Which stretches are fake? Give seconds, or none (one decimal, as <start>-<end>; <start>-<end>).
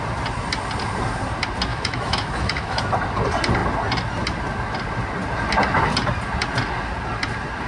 1.7-2.8